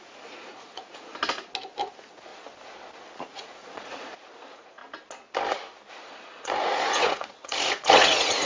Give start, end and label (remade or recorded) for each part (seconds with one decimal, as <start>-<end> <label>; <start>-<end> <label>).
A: 0.0-1.1 remade; 1.1-1.9 recorded; 1.9-2.3 remade; 2.3-3.3 recorded; 3.3-4.8 remade; 4.8-5.9 recorded; 5.9-8.5 remade